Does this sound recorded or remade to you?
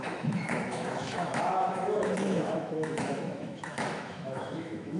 remade